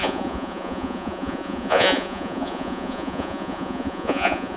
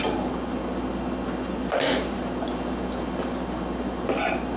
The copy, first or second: first